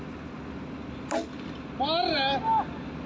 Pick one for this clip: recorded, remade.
recorded